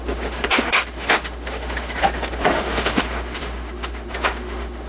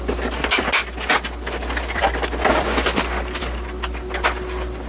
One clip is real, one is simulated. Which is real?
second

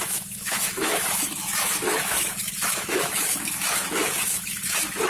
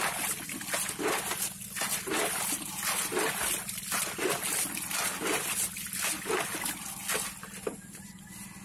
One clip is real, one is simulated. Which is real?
second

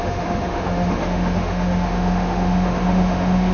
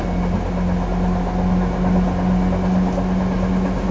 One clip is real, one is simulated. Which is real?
second